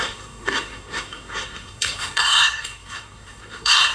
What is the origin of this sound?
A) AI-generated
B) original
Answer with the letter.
A